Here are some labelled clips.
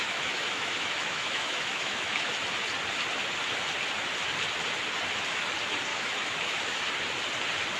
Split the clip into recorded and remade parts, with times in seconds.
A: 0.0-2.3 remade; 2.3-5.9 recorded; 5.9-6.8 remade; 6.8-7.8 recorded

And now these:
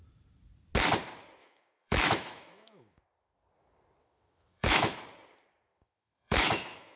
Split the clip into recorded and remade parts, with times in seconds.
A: 0.0-1.4 recorded; 1.4-3.0 remade; 3.0-4.0 recorded; 4.0-5.0 remade; 5.0-5.7 recorded; 5.7-7.0 remade

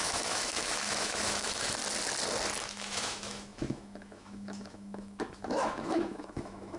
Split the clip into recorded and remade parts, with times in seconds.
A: 0.0-1.8 remade; 1.8-2.6 recorded; 2.6-6.8 remade

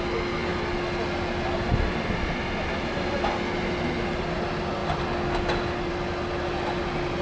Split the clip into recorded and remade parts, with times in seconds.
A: 0.0-7.2 recorded

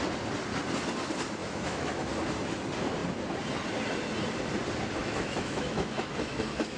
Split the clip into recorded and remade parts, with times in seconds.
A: 0.0-1.4 recorded; 1.4-2.1 remade; 2.1-5.0 recorded; 5.0-6.8 remade

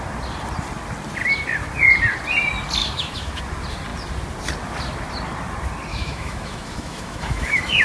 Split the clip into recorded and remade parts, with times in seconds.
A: 0.0-2.8 recorded; 2.8-3.4 remade; 3.4-5.9 recorded; 5.9-7.8 remade